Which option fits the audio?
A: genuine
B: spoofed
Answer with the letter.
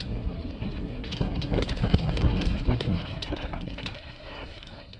B